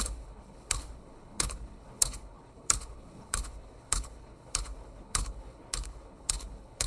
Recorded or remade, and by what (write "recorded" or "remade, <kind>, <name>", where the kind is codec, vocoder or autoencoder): remade, codec, HILCodec